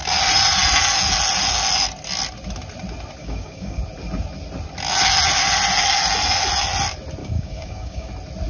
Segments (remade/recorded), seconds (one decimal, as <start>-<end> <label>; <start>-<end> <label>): 0.0-3.2 recorded; 3.2-3.8 remade; 3.8-7.2 recorded; 7.2-8.1 remade; 8.1-8.5 recorded